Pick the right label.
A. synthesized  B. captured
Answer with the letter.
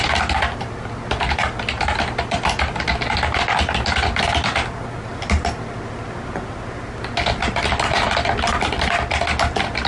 B